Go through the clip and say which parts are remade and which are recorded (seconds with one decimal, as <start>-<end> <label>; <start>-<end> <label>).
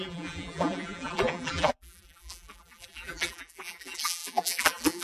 0.0-5.0 remade